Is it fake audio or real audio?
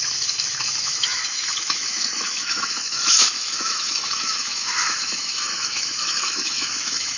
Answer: fake